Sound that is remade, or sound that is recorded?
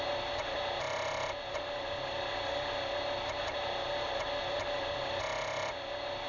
recorded